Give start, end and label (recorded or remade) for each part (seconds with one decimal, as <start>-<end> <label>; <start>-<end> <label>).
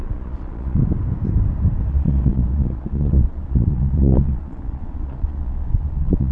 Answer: 0.0-0.8 remade; 0.8-1.9 recorded; 1.9-6.3 remade